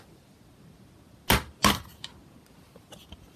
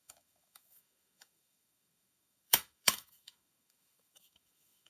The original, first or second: first